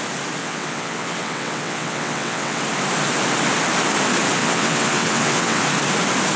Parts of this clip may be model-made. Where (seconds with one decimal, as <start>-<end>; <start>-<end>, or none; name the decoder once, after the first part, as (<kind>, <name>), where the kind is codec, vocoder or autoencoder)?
0.4-2.6 (vocoder, WaveNeXt); 4.4-5.6